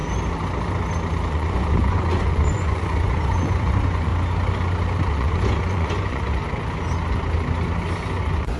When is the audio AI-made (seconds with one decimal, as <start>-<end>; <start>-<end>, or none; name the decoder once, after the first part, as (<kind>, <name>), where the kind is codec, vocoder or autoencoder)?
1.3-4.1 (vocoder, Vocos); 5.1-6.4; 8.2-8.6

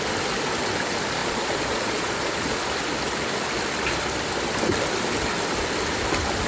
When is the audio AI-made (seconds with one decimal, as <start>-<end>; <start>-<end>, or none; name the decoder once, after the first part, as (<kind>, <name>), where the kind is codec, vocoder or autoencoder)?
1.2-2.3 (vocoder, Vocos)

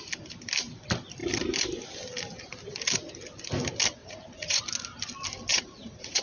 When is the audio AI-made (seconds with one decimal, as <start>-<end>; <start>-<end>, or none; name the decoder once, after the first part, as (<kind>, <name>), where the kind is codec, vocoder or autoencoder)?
4.0-4.6 (vocoder, Vocos); 5.5-6.2